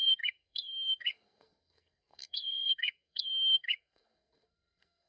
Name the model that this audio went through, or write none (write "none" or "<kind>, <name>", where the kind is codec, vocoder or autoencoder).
codec, SNAC